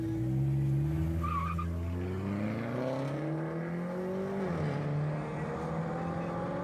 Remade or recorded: recorded